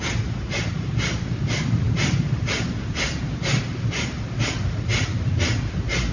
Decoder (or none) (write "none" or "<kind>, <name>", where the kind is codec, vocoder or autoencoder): none